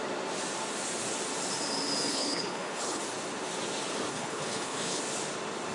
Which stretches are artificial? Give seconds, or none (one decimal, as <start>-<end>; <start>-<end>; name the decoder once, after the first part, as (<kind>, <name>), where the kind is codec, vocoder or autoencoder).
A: 2.1-3.0 (codec, HILCodec); 4.1-5.0